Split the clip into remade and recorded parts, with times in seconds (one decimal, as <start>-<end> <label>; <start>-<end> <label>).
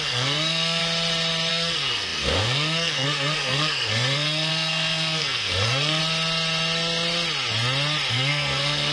0.0-0.8 remade; 0.8-1.5 recorded; 1.5-6.0 remade; 6.0-8.1 recorded; 8.1-8.9 remade